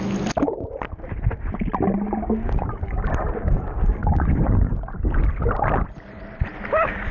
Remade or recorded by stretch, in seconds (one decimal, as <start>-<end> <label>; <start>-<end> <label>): 0.0-4.0 recorded; 4.0-4.7 remade; 4.7-7.1 recorded

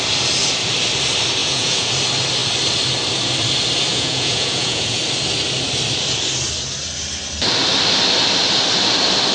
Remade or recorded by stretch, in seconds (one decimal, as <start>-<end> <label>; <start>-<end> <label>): 0.0-1.4 recorded; 1.4-1.9 remade; 1.9-3.9 recorded; 3.9-5.0 remade; 5.0-9.3 recorded